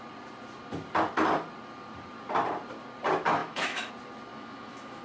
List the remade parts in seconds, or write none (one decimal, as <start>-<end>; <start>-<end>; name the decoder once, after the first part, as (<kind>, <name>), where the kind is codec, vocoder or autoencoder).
3.4-3.9 (autoencoder, DAC-VAE); 4.3-5.0